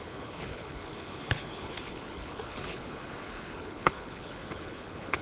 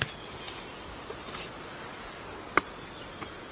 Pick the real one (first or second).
second